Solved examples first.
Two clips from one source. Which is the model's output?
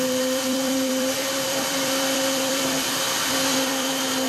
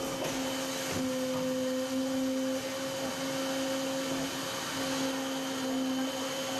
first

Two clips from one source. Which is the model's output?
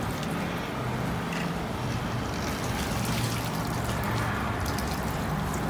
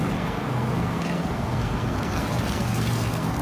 second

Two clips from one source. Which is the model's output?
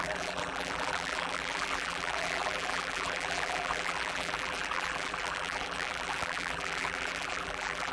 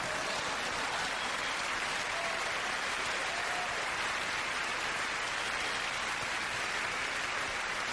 first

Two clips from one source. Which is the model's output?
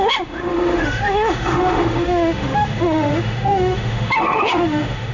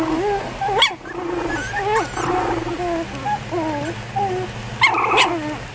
first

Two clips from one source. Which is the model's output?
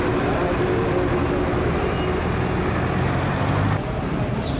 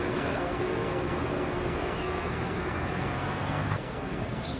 second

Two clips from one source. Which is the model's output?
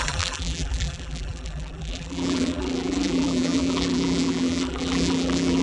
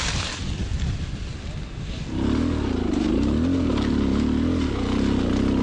first